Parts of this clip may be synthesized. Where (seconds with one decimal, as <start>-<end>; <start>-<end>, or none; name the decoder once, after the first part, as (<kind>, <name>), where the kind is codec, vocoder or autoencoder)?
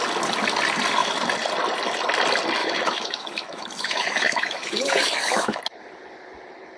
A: 2.6-5.6 (autoencoder, DAC-VAE)